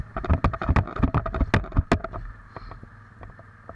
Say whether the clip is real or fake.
real